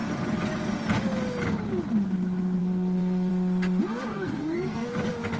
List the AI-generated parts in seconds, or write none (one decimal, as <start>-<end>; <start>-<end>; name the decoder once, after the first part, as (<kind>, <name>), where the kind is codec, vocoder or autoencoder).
2.6-3.3 (codec, SNAC); 4.1-4.9